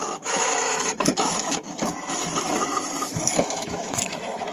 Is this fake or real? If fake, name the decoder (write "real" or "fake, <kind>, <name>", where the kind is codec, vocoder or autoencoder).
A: fake, autoencoder, DAC-VAE